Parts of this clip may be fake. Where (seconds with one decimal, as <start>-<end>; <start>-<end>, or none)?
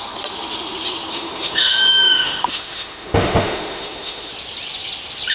1.1-4.3